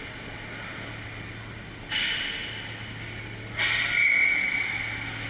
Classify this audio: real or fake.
real